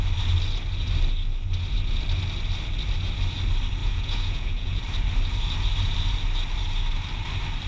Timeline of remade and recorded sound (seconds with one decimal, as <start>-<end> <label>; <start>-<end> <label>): 0.0-3.8 recorded; 3.8-4.8 remade; 4.8-7.7 recorded